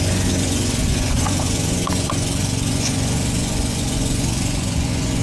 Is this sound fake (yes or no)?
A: yes